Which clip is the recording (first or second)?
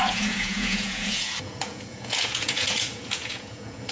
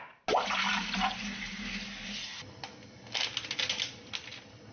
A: second